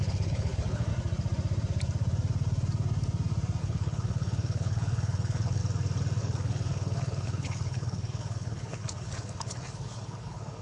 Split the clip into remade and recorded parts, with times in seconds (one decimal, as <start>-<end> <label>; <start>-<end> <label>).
0.0-0.9 remade; 0.9-3.6 recorded; 3.6-5.6 remade; 5.6-6.2 recorded; 6.2-10.6 remade